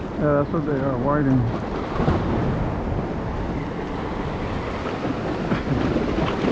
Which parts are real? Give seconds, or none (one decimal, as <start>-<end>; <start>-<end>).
0.0-6.5